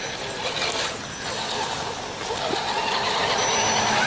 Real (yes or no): yes